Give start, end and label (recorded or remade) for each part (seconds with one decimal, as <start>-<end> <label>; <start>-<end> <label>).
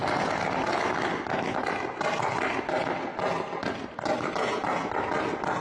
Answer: 0.0-5.6 recorded